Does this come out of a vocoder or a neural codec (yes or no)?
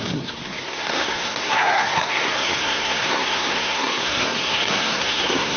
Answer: yes